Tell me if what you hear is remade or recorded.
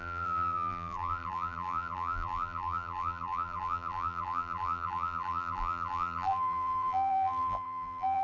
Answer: remade